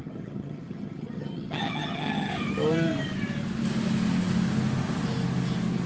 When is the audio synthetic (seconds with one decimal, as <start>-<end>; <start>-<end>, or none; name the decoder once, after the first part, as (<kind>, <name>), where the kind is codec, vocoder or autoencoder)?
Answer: 0.0-2.3 (vocoder, HiFi-GAN)

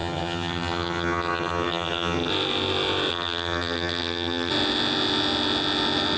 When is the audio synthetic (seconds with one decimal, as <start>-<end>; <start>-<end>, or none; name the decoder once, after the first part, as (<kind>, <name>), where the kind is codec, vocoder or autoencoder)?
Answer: 0.0-2.3 (vocoder, HiFi-GAN); 3.1-4.5

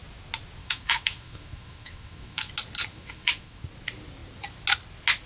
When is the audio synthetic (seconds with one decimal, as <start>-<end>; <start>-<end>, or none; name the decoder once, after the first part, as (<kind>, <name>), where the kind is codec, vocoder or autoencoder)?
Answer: 0.6-2.5 (autoencoder, DAC-VAE); 2.9-3.6

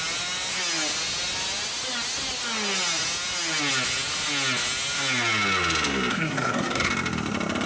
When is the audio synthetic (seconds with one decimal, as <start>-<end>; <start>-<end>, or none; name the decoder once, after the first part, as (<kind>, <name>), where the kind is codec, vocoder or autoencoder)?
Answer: 6.1-6.9 (codec, SNAC)

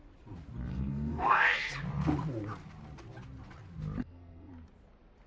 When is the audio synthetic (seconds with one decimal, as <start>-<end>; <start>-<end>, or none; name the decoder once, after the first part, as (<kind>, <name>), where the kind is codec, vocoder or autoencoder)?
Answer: 0.7-1.7 (codec, SNAC); 4.0-4.5

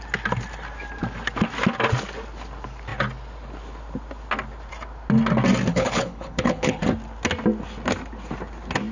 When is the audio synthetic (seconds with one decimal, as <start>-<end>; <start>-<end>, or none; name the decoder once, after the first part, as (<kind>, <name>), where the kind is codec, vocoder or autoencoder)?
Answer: 5.7-6.8 (codec, HILCodec)

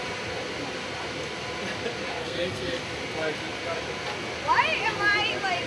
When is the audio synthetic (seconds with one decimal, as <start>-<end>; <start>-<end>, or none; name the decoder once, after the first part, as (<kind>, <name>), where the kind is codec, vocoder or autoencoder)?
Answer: 2.2-2.8 (codec, SNAC)